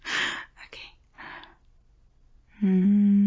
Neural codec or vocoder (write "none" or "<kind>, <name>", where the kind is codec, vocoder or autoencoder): none